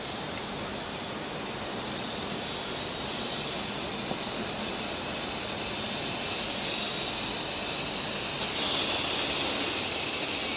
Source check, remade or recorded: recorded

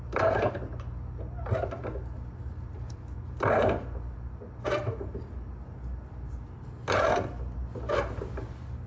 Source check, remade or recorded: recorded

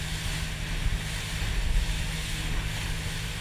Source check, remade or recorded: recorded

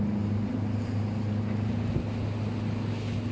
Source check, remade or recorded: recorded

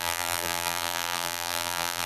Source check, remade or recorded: remade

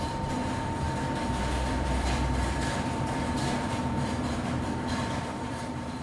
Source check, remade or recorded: remade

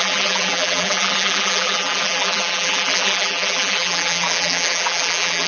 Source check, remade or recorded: remade